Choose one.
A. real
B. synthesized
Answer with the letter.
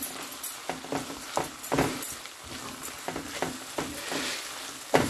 A